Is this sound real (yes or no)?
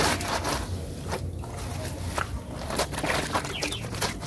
yes